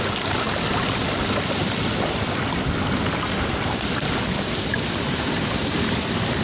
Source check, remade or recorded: recorded